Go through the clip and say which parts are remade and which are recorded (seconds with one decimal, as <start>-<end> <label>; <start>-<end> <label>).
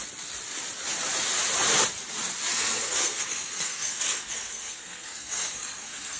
0.0-2.5 recorded; 2.5-6.2 remade